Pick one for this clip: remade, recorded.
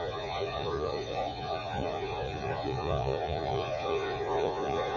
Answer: remade